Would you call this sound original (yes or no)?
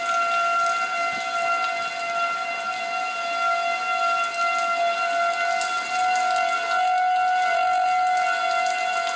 yes